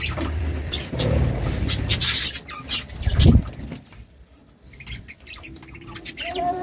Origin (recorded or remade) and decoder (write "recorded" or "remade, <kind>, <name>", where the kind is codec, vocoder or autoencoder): remade, vocoder, BigVGAN v2